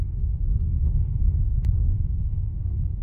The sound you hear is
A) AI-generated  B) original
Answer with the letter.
A